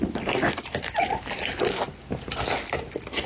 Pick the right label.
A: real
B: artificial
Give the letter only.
A